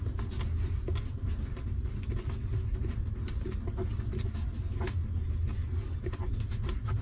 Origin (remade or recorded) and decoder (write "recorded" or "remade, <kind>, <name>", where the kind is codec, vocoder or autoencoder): recorded